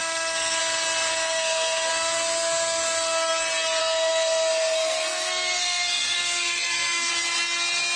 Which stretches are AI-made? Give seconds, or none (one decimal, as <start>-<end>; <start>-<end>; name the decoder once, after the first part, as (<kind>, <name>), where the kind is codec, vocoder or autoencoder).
0.0-0.6 (codec, SNAC); 1.1-1.9; 3.8-7.1